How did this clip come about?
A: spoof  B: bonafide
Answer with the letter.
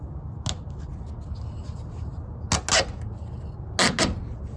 B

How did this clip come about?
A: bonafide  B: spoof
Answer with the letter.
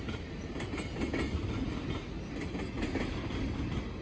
A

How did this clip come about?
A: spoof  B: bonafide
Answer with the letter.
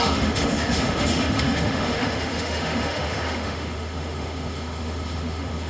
A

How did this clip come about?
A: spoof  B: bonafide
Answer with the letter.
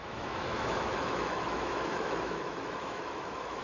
A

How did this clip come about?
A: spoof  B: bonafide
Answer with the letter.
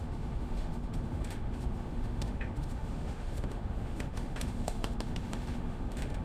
A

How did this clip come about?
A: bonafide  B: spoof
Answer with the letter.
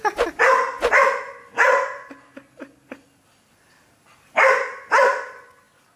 A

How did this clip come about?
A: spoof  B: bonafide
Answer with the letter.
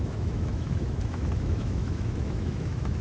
A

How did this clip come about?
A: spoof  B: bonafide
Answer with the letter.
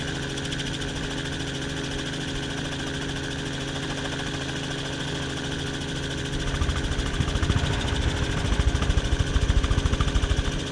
B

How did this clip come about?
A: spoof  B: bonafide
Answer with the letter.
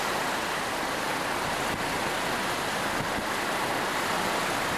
B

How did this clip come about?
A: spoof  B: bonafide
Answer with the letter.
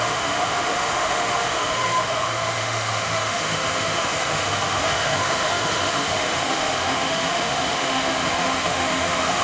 A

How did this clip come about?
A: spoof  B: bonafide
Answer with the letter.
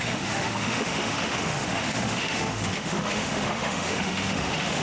A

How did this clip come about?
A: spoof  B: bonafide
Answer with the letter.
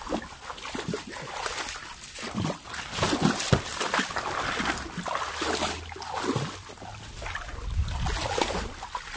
B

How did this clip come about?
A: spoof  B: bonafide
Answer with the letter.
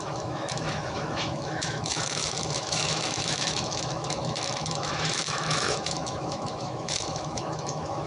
A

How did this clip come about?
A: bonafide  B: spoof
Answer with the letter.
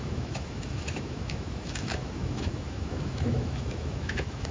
B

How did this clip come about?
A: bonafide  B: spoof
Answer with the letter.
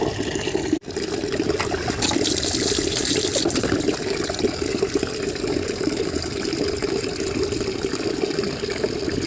A